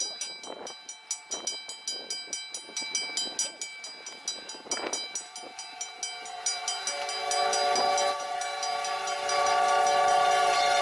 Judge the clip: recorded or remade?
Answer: recorded